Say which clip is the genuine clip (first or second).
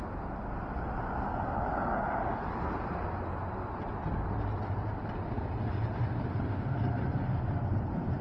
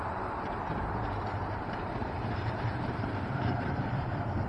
first